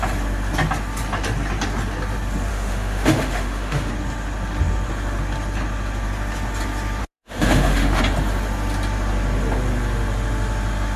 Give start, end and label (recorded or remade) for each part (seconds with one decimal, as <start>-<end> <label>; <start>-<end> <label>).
0.0-2.5 recorded; 2.5-3.9 remade; 3.9-7.0 recorded; 7.0-8.0 remade; 8.0-11.0 recorded